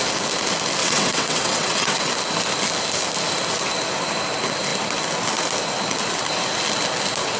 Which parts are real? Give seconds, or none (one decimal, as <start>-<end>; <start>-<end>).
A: 0.0-0.8; 2.1-7.4